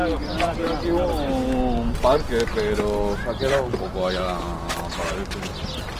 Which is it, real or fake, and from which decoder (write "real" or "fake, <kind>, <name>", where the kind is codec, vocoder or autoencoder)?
real